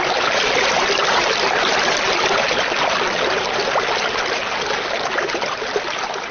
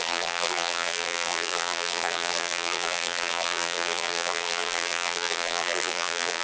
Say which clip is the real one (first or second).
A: first